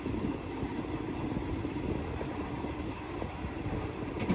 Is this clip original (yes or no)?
yes